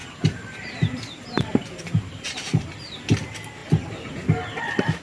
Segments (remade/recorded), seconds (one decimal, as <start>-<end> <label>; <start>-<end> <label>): 0.0-3.0 remade; 3.0-5.0 recorded